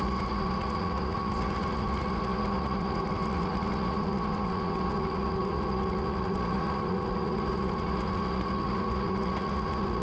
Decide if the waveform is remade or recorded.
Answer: remade